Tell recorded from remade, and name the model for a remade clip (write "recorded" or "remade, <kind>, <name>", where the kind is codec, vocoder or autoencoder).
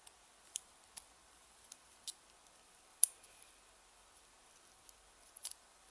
remade, vocoder, BigVGAN v2